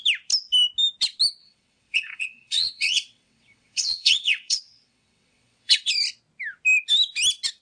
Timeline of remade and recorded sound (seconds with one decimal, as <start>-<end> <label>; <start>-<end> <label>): 0.0-1.4 recorded; 1.4-5.9 remade; 5.9-7.6 recorded